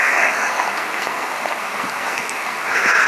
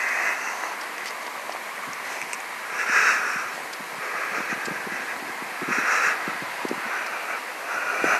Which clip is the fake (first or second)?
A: first